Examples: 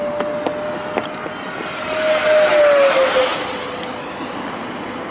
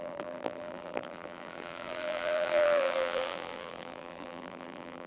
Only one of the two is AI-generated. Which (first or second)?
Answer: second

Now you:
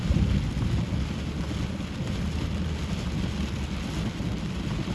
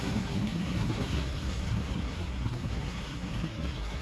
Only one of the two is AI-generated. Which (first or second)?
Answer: second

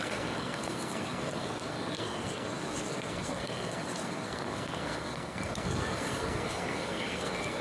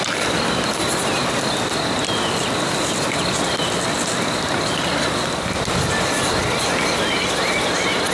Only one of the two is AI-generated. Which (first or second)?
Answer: first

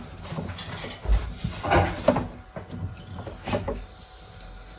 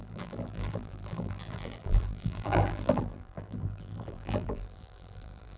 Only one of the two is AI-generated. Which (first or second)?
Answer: second